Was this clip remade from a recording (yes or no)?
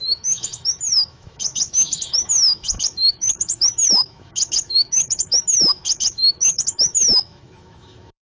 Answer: yes